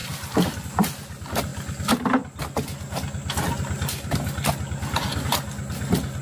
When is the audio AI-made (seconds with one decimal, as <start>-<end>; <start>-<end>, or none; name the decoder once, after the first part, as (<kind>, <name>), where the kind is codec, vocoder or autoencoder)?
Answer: none